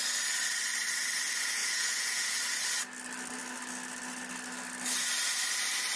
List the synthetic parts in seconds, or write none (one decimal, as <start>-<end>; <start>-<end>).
1.6-2.4